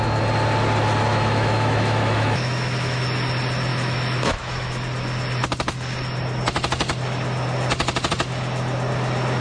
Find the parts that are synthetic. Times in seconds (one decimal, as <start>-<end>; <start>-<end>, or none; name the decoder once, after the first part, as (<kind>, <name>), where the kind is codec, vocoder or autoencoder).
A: 1.1-3.0 (autoencoder, DAC-VAE); 3.7-4.7